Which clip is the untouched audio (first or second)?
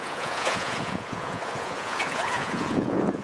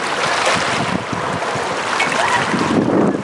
second